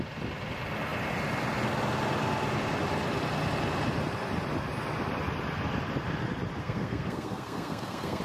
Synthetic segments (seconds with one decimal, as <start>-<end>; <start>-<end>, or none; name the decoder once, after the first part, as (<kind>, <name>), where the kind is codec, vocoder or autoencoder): 6.6-8.2 (codec, SNAC)